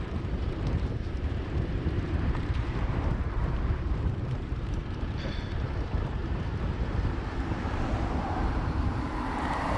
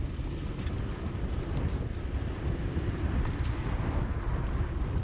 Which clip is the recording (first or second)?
second